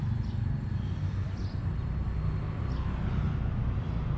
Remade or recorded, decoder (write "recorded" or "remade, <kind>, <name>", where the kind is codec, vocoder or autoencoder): recorded